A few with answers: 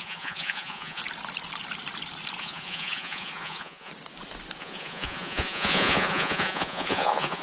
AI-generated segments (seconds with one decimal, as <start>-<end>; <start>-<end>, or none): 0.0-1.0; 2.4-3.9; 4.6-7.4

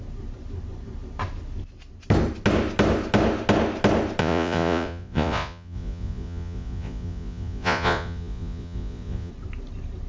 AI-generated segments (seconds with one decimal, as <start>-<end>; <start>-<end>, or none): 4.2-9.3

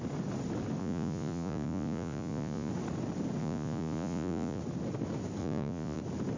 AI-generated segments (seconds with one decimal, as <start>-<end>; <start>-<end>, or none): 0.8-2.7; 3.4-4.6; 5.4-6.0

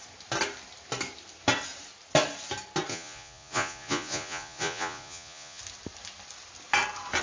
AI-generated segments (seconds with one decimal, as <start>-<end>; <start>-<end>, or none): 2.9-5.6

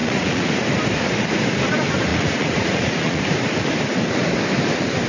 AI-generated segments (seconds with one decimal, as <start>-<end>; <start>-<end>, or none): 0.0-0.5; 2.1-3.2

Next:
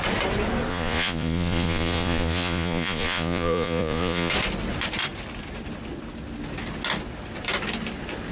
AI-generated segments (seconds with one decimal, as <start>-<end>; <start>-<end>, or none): 0.7-4.3

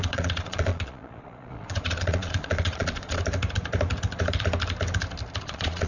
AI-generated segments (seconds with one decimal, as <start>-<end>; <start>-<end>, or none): 0.0-3.2; 5.4-5.9

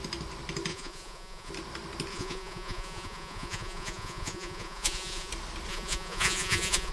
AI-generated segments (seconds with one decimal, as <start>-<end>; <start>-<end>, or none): 0.7-1.5; 2.1-5.3; 5.7-6.9